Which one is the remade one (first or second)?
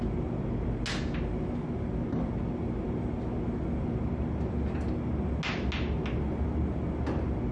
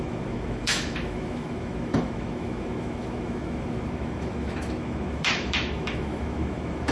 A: second